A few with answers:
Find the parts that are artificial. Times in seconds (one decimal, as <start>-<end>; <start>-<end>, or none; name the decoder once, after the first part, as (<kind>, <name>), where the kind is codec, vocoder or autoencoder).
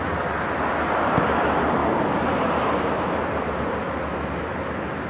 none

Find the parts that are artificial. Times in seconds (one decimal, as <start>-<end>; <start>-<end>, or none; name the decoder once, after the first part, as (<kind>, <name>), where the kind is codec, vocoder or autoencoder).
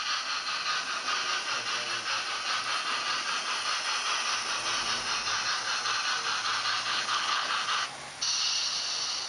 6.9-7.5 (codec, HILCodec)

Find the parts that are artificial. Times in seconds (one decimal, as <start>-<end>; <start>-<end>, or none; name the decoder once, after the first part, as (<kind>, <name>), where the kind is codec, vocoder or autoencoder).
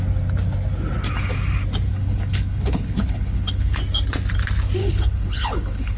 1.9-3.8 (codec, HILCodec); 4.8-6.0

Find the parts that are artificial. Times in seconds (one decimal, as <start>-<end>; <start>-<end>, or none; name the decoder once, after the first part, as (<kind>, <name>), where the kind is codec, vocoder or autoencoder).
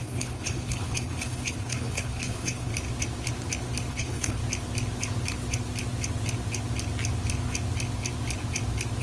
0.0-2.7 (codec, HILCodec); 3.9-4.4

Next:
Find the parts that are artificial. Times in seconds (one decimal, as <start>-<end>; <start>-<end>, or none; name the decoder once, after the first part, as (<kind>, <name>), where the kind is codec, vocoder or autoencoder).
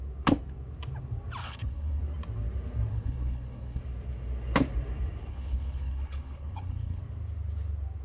1.4-2.0 (codec, HILCodec); 2.9-3.8; 5.3-7.0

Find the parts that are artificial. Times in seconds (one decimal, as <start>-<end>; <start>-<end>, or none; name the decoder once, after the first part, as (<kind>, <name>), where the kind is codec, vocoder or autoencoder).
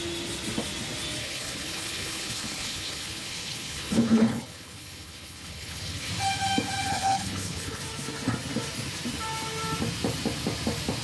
1.2-6.1 (codec, HILCodec); 6.9-7.8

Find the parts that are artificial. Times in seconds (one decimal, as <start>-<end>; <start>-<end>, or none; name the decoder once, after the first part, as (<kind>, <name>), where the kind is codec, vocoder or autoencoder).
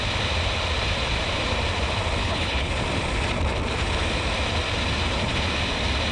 2.2-2.7 (codec, HILCodec)